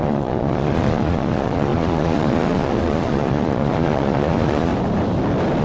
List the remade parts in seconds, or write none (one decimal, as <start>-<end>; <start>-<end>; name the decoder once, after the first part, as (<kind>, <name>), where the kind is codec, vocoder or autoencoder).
0.0-4.7 (vocoder, Vocos)